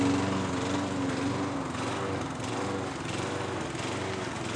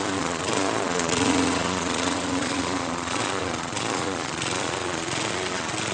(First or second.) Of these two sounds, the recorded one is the first